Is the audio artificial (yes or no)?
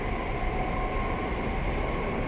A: no